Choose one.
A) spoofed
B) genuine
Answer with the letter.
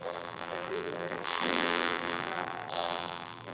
A